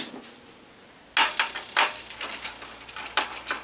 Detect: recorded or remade recorded